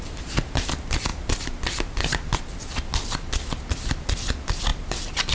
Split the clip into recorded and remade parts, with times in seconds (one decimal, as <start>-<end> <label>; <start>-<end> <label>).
0.0-5.3 recorded